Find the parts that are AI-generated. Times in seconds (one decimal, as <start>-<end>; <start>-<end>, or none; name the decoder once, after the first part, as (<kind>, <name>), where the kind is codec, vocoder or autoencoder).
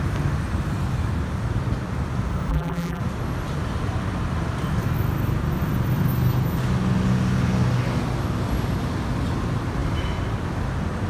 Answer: 2.5-3.0 (vocoder, BigVGAN v2)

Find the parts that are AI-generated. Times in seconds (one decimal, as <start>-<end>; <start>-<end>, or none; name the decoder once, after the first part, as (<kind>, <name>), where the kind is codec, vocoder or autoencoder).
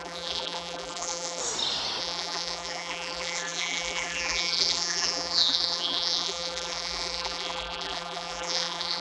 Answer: 0.0-1.4 (vocoder, BigVGAN v2); 2.0-9.0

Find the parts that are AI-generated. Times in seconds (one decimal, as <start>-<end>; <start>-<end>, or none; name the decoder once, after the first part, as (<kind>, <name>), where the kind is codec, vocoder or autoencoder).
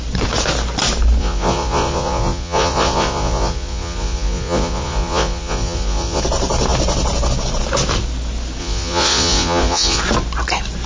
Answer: 1.2-6.2 (vocoder, Vocos); 8.6-10.0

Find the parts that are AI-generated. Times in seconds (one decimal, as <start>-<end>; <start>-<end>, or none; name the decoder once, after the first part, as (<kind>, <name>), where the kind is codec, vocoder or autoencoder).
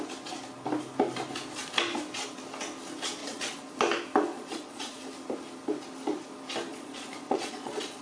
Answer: 3.2-3.7 (vocoder, Vocos); 4.3-5.0; 6.7-8.0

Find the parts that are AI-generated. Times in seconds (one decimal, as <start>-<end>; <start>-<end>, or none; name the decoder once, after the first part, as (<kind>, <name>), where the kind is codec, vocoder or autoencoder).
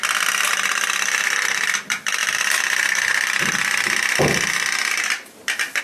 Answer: none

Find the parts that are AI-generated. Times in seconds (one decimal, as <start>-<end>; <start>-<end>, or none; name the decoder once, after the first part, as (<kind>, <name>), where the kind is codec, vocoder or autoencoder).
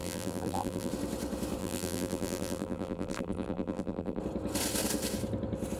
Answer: 0.0-0.9 (vocoder, BigVGAN v2); 1.6-4.2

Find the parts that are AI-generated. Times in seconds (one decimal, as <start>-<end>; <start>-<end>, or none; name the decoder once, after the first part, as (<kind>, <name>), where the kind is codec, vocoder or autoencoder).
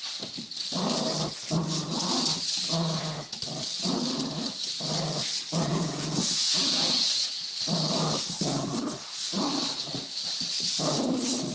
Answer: 5.7-7.3 (vocoder, Vocos)